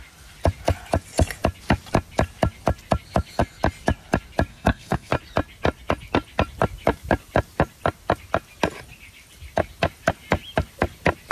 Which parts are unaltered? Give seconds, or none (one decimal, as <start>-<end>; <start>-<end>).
0.0-4.5; 5.1-11.3